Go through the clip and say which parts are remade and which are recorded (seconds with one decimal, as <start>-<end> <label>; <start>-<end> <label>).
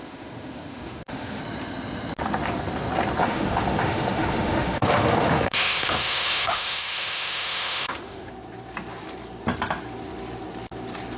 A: 0.0-1.4 remade; 1.4-3.2 recorded; 3.2-8.3 remade; 8.3-11.2 recorded